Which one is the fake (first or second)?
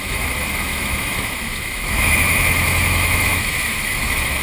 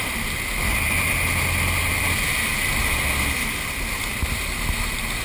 first